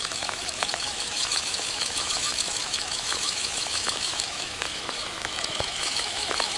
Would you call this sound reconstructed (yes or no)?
yes